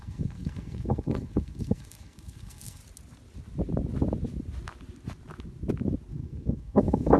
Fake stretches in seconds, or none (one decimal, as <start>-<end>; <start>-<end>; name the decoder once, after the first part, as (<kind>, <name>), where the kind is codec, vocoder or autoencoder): 0.0-2.8 (codec, SNAC); 6.1-7.2